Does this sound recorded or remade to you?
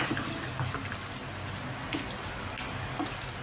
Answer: recorded